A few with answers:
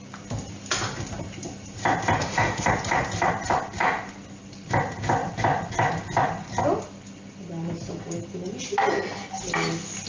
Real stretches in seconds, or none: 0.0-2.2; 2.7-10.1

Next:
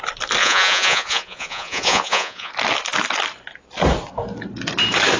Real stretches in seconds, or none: 0.0-0.4; 2.5-5.2

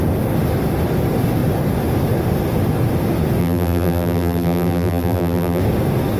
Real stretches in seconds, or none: 0.0-3.4; 5.6-6.2

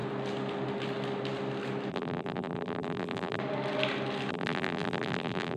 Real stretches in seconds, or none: 0.0-1.9; 3.4-4.3